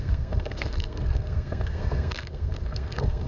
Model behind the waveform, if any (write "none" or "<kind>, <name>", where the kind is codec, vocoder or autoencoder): codec, SNAC